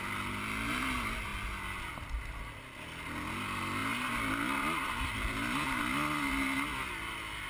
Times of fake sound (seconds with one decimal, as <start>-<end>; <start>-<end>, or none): none